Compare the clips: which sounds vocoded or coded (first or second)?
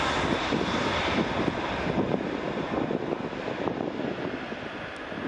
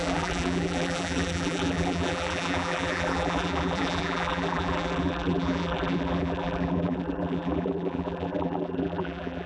second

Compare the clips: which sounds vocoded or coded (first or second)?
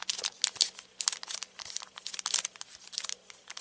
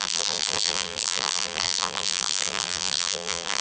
second